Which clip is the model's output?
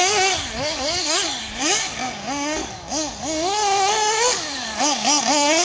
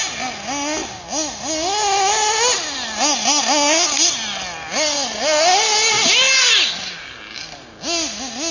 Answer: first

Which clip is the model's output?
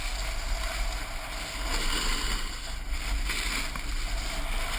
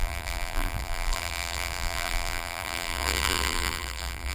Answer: second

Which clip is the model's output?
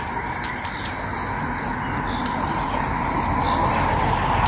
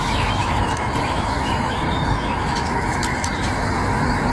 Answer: second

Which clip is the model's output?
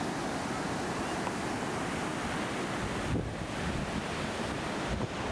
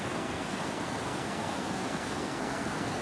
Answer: second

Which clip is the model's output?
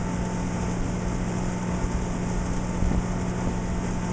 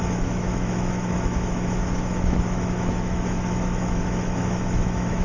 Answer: second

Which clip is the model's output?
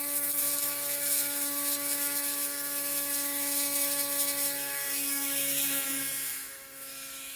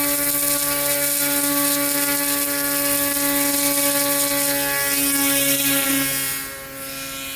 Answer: first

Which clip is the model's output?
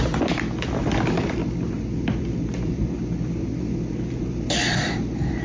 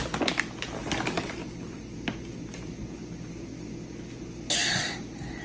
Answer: first